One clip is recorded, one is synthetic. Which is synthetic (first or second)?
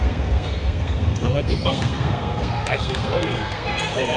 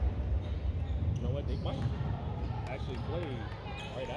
first